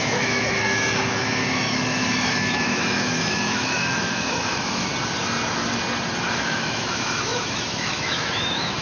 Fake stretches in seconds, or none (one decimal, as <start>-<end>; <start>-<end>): 0.0-4.9; 6.2-8.8